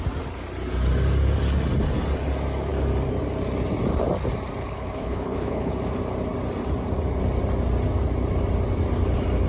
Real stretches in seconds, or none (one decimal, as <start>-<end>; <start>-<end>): 0.0-4.6; 5.8-9.5

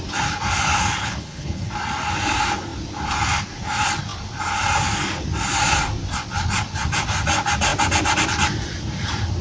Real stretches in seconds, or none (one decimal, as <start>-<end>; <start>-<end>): 0.0-1.0; 1.7-9.4

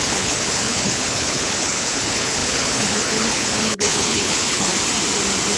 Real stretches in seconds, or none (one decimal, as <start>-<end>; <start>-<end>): 4.7-5.6

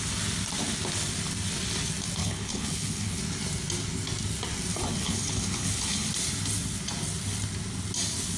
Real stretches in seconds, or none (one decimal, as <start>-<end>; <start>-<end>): 0.0-2.2; 3.2-4.7; 6.1-8.4

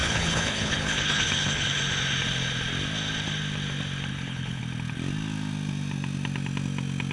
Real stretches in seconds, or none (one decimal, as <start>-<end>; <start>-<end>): 1.8-4.1; 4.6-7.1

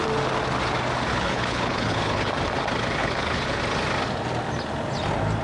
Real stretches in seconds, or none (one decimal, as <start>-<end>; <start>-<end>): 0.0-1.1; 2.3-3.0; 3.6-5.4